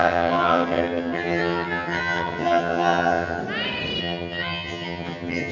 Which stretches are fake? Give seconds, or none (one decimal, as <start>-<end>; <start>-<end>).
0.0-3.4; 4.0-5.5